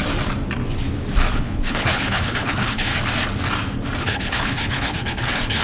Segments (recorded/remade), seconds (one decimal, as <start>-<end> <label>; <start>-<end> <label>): 0.0-1.3 recorded; 1.3-2.9 remade; 2.9-4.0 recorded; 4.0-5.6 remade